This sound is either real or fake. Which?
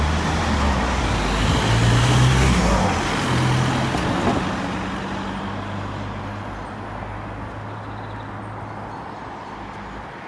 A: real